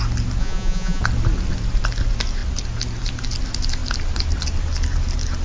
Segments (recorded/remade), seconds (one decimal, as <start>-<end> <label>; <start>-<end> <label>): 0.0-0.4 recorded; 0.4-1.0 remade; 1.0-5.4 recorded